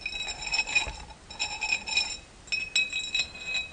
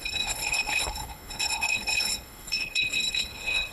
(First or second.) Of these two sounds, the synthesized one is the second